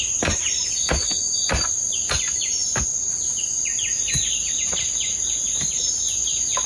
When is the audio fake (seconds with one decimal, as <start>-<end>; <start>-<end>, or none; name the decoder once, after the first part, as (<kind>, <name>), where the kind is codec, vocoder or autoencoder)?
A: none